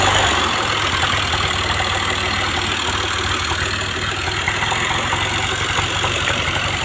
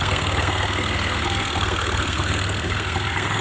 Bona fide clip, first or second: first